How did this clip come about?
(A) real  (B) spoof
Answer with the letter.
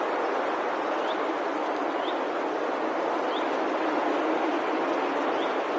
A